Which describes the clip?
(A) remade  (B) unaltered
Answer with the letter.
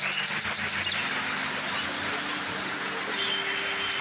B